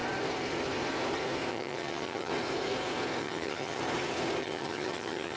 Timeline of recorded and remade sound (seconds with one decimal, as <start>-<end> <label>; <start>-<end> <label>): 0.0-1.5 recorded; 1.5-2.3 remade; 2.3-3.2 recorded; 3.2-3.8 remade; 3.8-4.4 recorded; 4.4-5.4 remade